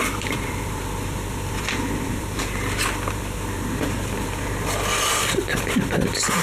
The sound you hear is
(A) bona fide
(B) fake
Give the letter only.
B